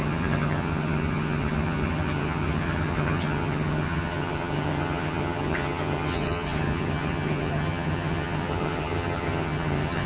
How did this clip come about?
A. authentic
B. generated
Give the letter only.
B